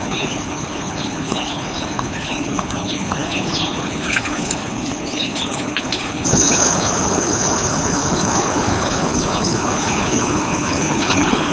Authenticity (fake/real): fake